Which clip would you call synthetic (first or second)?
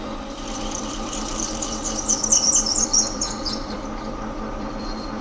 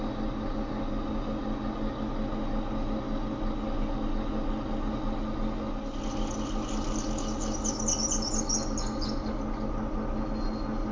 first